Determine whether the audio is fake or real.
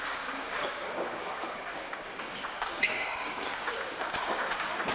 fake